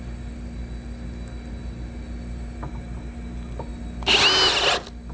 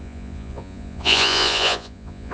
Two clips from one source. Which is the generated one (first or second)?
second